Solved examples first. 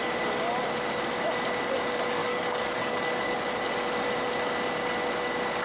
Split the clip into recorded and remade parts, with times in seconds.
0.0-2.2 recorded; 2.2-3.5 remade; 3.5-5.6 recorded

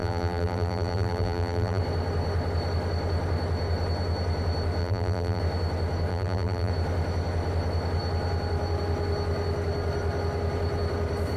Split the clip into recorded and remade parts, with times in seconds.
0.0-1.8 remade; 1.8-4.8 recorded; 4.8-5.4 remade; 5.4-6.1 recorded; 6.1-6.7 remade; 6.7-11.4 recorded